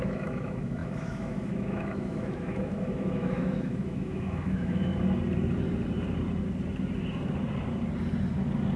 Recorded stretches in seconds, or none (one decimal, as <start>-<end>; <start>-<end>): 4.9-8.8